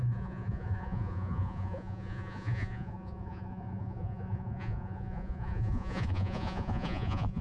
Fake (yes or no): yes